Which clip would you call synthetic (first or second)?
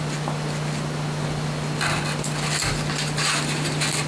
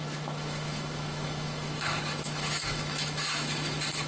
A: second